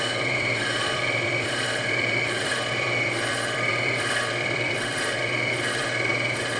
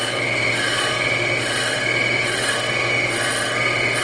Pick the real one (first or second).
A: second